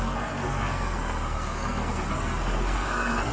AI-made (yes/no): yes